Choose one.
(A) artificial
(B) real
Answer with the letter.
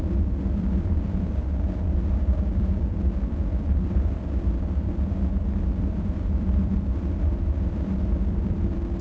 A